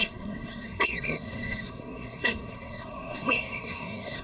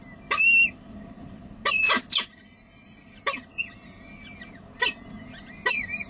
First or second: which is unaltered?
second